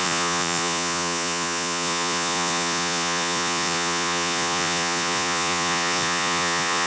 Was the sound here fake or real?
fake